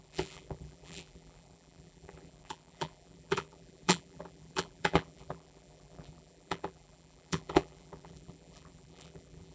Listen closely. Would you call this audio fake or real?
fake